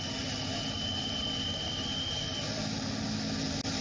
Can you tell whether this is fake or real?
real